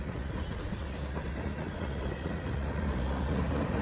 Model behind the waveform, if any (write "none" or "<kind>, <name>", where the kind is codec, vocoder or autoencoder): vocoder, Vocos